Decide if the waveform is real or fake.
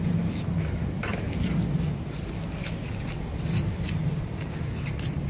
real